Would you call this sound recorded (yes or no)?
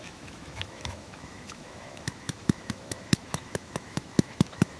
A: no